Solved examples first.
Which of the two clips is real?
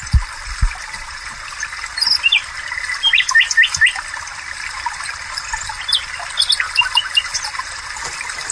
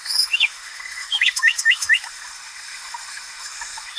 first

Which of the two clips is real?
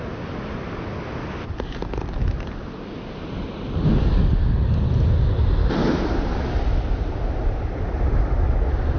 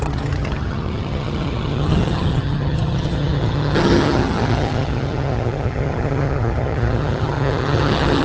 first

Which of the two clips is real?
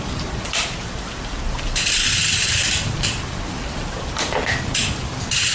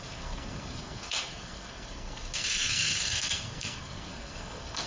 first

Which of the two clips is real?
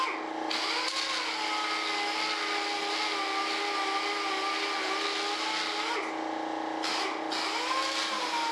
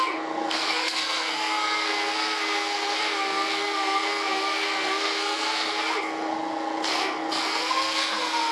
first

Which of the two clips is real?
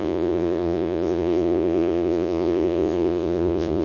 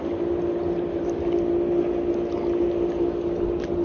second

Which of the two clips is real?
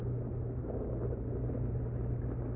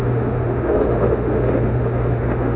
first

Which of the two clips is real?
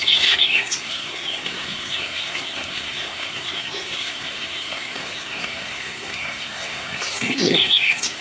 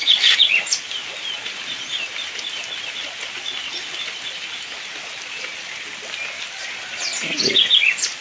second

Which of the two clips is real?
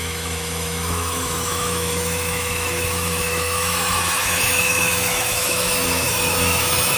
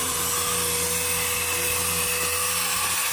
second